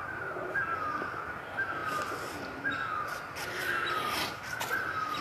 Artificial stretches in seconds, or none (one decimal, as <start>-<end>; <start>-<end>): none